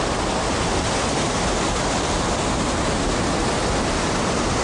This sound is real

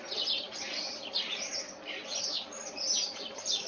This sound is real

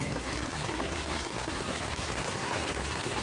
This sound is fake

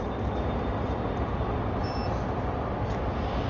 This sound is real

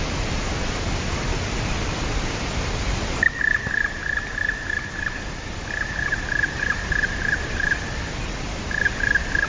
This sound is real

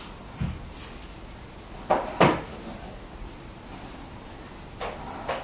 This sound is real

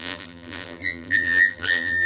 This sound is fake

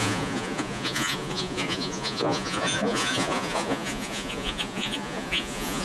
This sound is fake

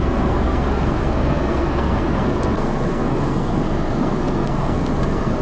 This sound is fake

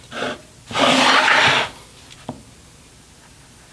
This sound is real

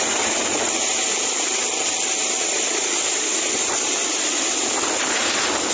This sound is real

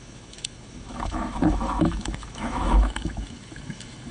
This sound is fake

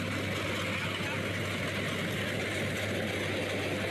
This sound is real